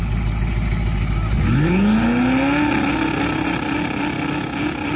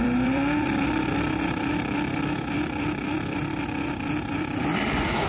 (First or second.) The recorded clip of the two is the first